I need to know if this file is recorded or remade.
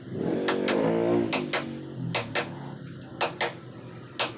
recorded